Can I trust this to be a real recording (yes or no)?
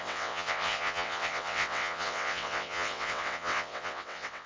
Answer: no